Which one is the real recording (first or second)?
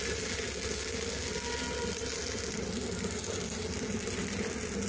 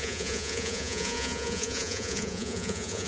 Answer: first